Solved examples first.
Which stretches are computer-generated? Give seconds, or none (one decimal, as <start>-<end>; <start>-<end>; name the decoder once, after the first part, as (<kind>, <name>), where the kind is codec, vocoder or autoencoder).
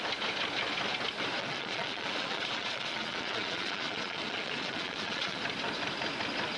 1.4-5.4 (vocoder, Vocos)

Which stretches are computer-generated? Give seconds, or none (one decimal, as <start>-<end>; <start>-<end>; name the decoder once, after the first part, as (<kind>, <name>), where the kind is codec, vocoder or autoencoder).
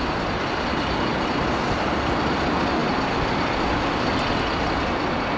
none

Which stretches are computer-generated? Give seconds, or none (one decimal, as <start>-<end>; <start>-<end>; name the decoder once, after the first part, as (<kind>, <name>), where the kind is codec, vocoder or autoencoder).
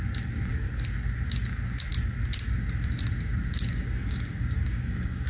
3.7-5.3 (codec, DAC)